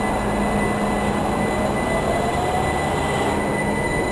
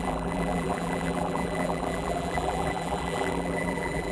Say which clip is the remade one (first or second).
second